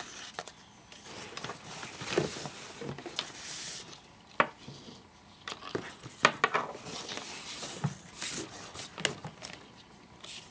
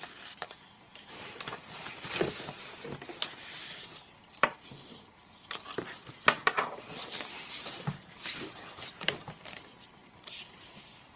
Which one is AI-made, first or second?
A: second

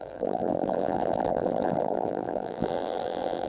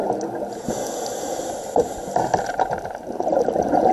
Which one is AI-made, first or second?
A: first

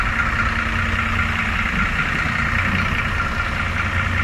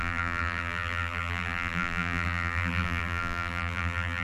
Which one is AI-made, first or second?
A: second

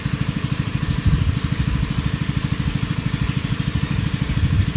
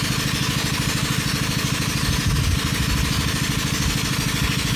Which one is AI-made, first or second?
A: first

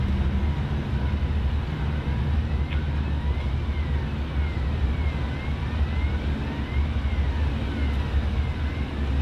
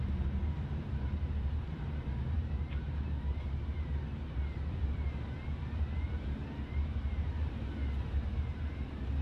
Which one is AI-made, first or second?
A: second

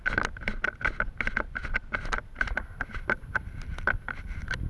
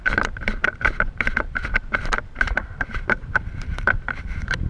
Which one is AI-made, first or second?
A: second